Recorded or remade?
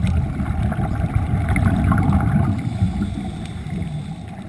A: recorded